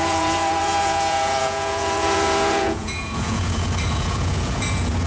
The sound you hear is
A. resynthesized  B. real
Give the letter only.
A